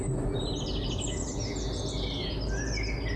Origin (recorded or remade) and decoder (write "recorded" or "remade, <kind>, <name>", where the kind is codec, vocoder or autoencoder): recorded